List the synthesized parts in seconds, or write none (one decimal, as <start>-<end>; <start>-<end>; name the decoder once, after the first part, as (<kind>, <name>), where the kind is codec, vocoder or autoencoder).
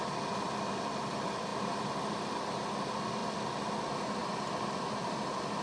none